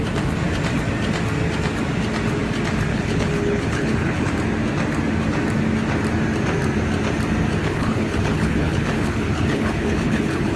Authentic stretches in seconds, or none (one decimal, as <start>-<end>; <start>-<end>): 0.0-2.9; 4.3-7.6